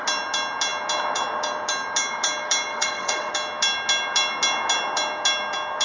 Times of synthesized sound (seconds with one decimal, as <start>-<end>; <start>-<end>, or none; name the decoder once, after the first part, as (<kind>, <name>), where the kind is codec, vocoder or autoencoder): 2.7-3.3 (vocoder, WaveNeXt)